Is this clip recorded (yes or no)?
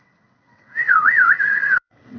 no